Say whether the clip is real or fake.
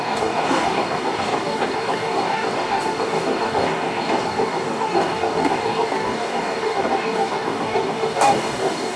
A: fake